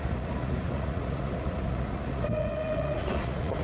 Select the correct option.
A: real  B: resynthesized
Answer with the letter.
B